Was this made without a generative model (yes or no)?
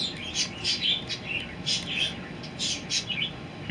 yes